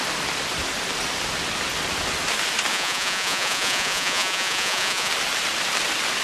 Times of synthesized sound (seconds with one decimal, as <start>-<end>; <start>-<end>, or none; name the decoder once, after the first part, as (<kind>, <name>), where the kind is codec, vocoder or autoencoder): 2.7-5.1 (vocoder, Vocos)